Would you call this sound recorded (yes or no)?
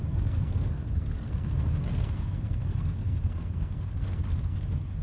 no